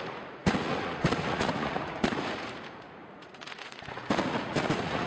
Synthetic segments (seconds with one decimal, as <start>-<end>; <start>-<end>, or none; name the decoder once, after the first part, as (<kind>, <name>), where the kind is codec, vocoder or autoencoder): 0.0-5.1 (vocoder, Vocos)